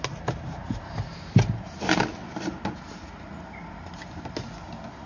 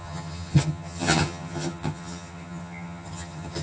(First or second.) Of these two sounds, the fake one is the second